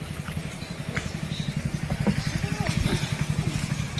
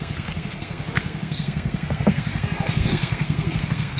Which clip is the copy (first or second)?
second